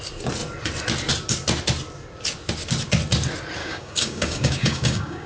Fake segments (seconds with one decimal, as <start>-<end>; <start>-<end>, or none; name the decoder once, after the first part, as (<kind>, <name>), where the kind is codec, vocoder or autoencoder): 3.6-5.3 (codec, DAC)